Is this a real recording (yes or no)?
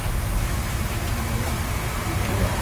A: yes